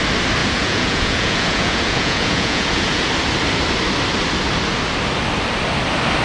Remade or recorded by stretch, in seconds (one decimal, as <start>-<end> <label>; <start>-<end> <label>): 0.0-0.4 recorded; 0.4-3.1 remade; 3.1-6.2 recorded